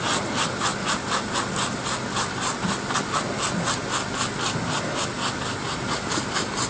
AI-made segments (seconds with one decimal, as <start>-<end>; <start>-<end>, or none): none